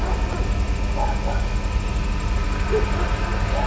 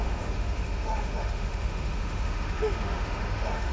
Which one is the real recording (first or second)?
first